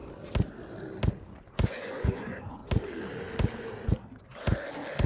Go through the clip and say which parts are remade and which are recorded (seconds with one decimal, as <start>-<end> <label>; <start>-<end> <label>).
0.0-1.7 recorded; 1.7-2.6 remade; 2.6-5.1 recorded

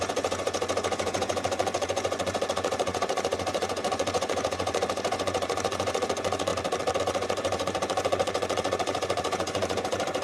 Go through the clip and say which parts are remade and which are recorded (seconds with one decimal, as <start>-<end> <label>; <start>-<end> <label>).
0.0-6.5 remade; 6.5-7.0 recorded; 7.0-10.2 remade

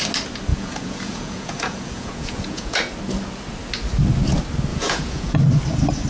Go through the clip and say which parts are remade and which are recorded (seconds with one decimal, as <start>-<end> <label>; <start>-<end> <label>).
0.0-0.5 recorded; 0.5-2.8 remade; 2.8-4.7 recorded; 4.7-5.4 remade; 5.4-6.1 recorded

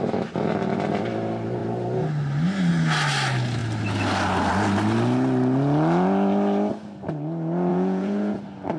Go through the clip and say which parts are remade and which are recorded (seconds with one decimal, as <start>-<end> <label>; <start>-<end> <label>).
0.0-7.7 recorded; 7.7-8.4 remade; 8.4-8.8 recorded

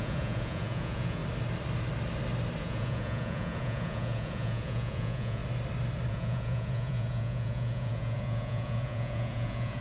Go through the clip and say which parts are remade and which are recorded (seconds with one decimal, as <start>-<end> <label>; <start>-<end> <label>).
0.0-1.2 remade; 1.2-2.6 recorded; 2.6-5.4 remade; 5.4-6.1 recorded; 6.1-9.8 remade